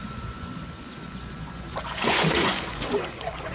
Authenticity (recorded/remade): remade